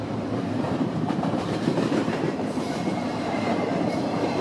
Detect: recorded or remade remade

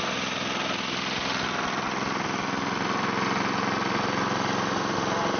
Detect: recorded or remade recorded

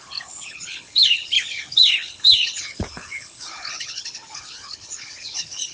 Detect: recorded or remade remade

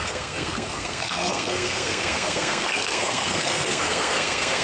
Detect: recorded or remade remade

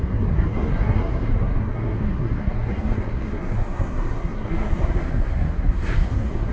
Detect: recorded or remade remade